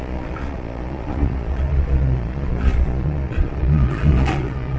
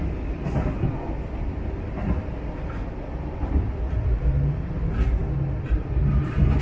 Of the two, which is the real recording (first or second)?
second